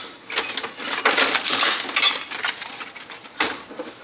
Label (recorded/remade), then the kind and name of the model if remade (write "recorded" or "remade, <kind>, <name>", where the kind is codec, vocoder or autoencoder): recorded